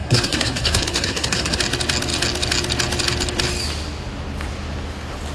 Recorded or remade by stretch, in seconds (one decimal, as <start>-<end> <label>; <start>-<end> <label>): 0.0-1.6 remade; 1.6-5.3 recorded